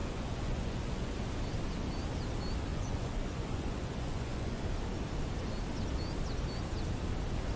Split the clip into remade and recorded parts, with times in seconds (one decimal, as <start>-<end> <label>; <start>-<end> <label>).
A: 0.0-1.1 remade; 1.1-2.7 recorded; 2.7-4.6 remade; 4.6-7.6 recorded